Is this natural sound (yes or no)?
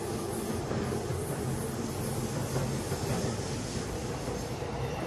yes